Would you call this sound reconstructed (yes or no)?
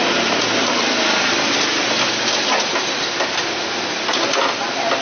no